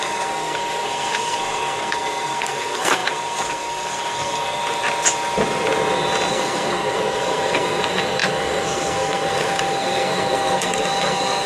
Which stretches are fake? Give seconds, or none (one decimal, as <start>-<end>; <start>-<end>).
0.0-4.6; 6.3-11.5